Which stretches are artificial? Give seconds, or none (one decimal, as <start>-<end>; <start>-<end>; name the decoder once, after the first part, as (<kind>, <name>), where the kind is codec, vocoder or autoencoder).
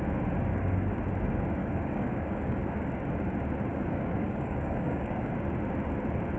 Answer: 0.5-1.1 (codec, DAC); 1.6-2.9; 3.7-5.3